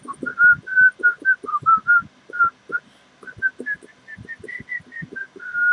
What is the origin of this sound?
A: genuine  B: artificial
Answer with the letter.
A